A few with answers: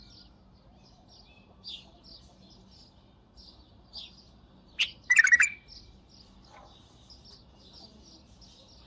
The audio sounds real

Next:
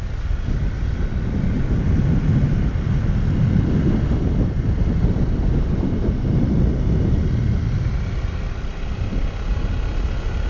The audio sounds real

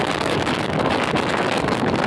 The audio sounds fake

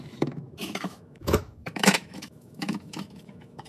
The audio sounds fake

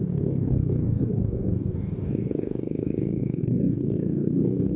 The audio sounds fake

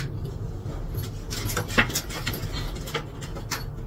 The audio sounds real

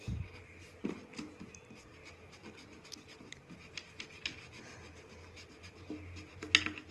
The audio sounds real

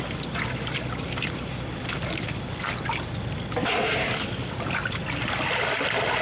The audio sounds real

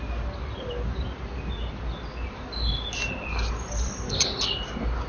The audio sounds real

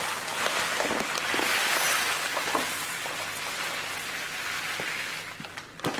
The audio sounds real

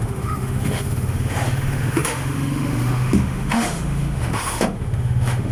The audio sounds fake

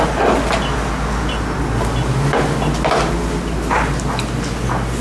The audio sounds real